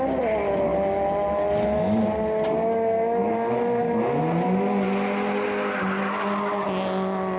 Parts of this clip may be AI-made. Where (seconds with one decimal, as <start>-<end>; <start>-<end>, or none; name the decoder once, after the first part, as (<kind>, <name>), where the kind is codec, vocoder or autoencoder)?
none